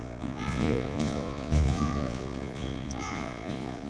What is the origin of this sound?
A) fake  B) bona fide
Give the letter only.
A